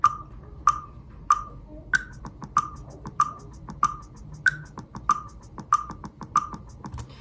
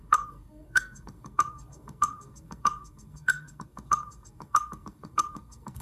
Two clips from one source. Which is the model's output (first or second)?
second